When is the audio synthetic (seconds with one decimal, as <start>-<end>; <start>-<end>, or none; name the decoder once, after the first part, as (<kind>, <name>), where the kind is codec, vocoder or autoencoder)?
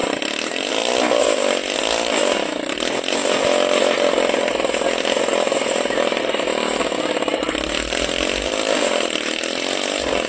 none